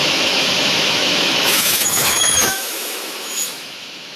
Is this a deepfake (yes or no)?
yes